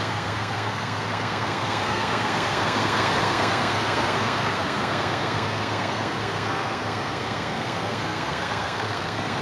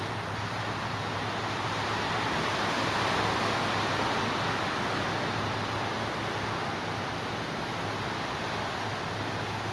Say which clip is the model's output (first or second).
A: first